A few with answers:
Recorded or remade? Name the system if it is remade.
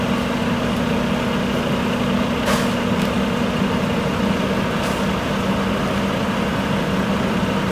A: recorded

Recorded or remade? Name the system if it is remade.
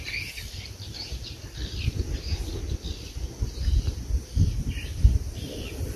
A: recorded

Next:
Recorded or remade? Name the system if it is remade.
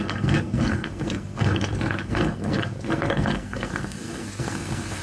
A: remade, codec, SNAC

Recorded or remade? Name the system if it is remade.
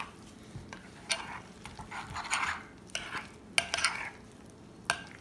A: recorded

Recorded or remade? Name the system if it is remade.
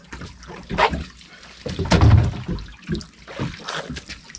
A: recorded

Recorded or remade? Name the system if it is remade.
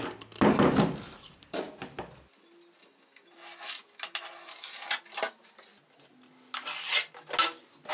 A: recorded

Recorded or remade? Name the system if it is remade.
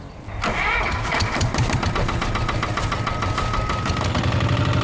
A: recorded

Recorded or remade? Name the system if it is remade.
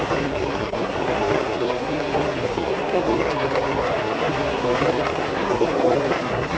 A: remade, codec, SNAC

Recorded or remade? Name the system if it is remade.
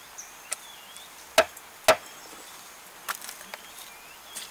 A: recorded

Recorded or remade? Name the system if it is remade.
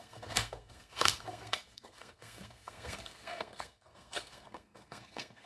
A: remade, codec, SNAC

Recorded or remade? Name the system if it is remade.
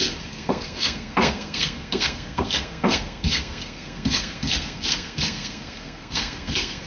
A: remade, codec, SNAC